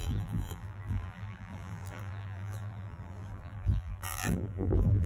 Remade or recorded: remade